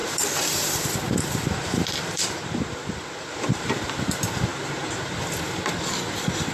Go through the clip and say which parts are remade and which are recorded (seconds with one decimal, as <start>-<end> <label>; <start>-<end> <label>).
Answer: 0.0-3.9 remade; 3.9-6.5 recorded